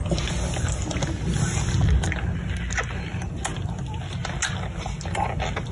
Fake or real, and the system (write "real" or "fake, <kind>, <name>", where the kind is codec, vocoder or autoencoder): real